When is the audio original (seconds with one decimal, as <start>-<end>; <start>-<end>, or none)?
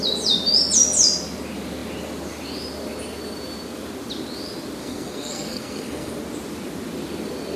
0.0-4.8; 6.1-7.6